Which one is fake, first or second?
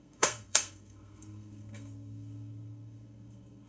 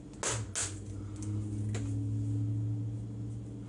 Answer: first